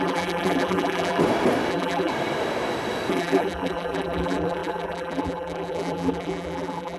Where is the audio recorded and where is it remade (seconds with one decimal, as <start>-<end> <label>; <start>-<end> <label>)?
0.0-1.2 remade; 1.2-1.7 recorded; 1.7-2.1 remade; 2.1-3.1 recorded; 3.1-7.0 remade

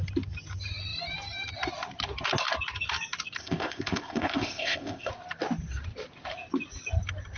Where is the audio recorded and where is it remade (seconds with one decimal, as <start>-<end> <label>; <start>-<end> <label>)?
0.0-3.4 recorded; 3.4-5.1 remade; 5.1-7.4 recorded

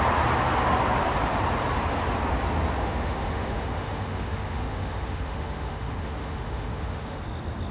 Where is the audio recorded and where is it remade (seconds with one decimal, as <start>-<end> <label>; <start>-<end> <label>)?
0.0-2.8 recorded; 2.8-7.2 remade; 7.2-7.7 recorded

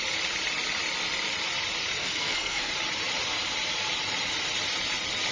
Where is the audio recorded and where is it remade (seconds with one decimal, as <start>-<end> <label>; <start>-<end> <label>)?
0.0-2.0 recorded; 2.0-2.7 remade; 2.7-5.3 recorded

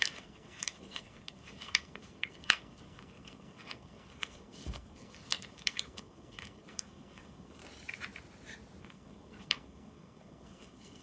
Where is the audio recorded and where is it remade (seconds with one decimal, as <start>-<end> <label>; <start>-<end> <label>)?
0.0-7.6 remade; 7.6-8.8 recorded; 8.8-11.0 remade